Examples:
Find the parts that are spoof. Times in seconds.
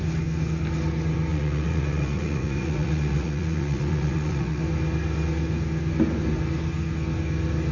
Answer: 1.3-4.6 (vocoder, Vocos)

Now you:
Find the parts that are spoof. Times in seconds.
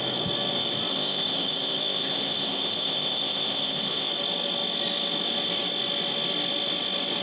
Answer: 0.9-4.1 (codec, ZipCodec)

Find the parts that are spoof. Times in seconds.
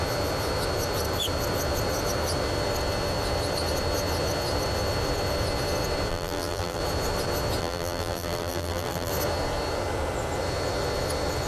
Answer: 6.1-6.8 (vocoder, BigVGAN v2); 7.6-9.1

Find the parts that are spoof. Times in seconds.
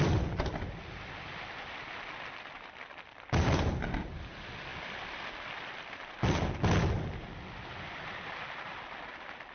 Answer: none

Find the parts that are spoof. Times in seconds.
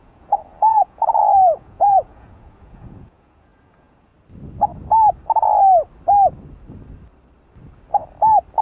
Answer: 0.0-4.1 (vocoder, Vocos)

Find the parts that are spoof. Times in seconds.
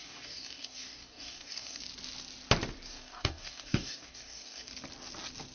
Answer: 0.0-1.8 (codec, DAC); 2.9-4.7